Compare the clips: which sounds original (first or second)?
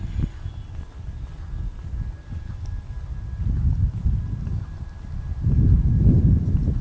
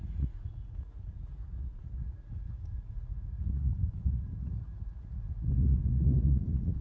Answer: first